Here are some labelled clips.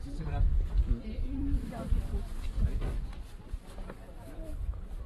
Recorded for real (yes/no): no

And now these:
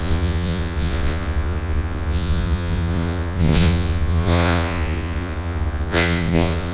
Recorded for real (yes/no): no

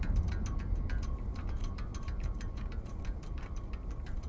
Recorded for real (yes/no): no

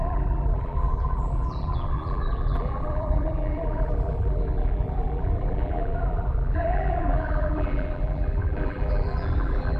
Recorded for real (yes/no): no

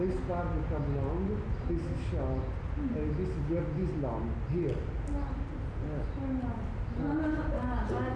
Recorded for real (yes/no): yes